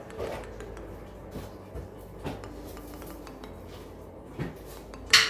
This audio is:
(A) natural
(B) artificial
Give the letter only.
A